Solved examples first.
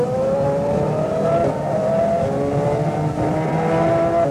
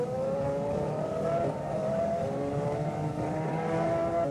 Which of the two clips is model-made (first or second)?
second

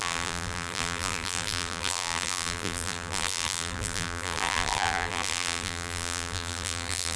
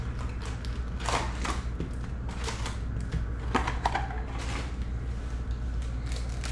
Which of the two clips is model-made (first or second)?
first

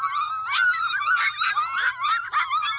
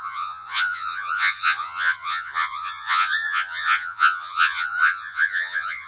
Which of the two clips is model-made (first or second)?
second